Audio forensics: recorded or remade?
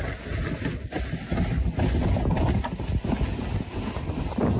recorded